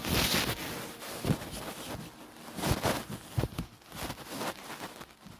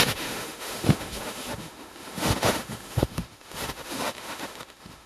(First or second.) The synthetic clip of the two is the second